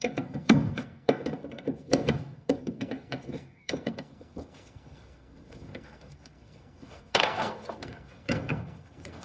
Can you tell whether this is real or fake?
fake